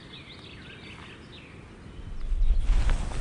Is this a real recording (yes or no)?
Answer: yes